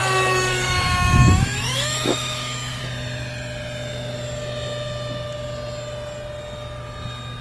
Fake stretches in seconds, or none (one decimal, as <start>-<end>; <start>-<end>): 0.0-2.8